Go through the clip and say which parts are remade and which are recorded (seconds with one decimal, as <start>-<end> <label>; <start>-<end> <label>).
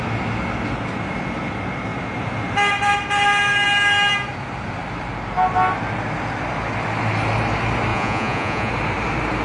0.0-7.9 recorded; 7.9-8.7 remade; 8.7-9.4 recorded